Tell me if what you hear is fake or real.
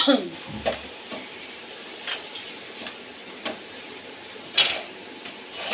real